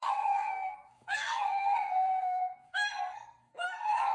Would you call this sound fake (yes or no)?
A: yes